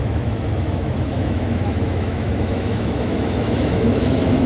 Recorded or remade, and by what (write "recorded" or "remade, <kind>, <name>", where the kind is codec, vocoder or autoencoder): remade, autoencoder, DAC-VAE